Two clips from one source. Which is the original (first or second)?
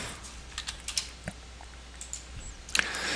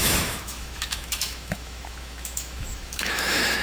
first